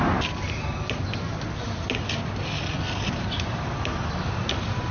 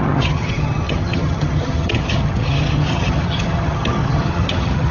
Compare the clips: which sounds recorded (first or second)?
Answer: first